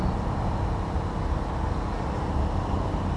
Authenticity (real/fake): real